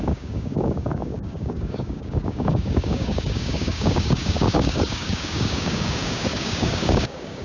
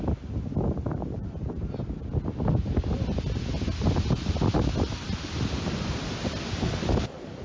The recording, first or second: second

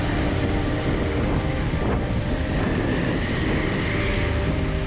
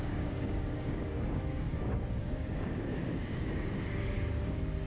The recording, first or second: first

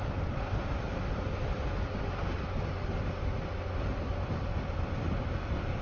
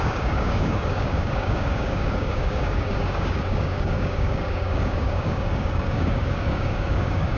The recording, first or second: first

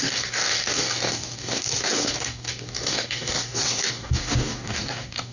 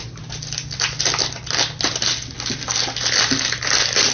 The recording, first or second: second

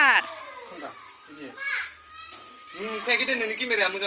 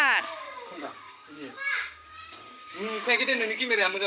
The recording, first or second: first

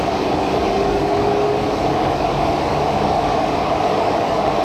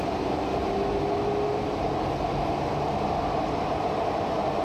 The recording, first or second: second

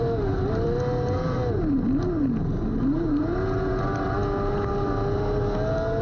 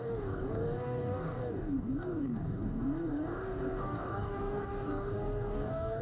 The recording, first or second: first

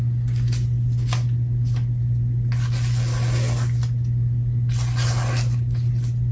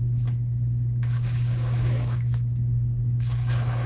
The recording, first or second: first